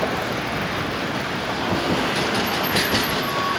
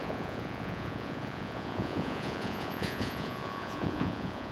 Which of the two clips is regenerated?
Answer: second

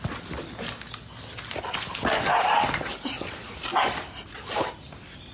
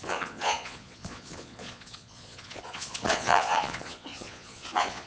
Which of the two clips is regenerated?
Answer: second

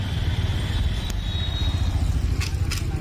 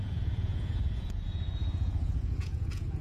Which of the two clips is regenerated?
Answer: second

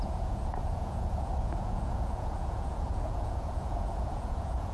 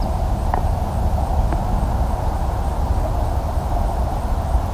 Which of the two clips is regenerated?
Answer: first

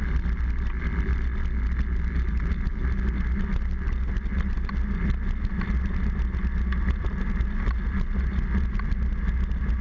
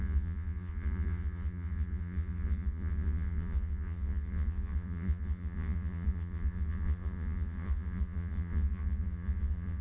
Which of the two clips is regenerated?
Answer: second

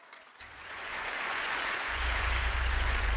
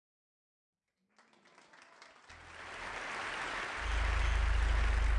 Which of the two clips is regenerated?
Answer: first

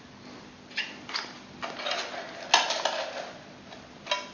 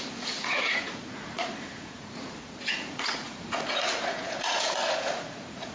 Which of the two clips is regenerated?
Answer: second